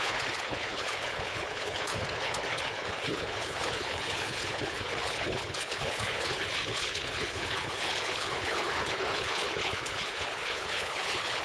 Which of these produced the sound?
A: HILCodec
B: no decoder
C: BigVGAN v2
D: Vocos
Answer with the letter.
A